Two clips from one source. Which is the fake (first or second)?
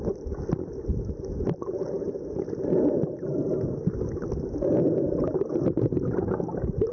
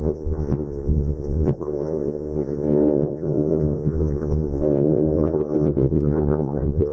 second